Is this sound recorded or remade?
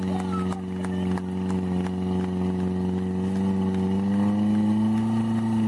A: recorded